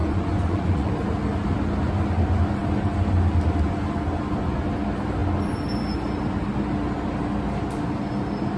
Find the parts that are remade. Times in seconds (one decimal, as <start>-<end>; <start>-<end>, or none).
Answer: 0.0-0.9